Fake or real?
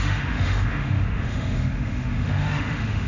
fake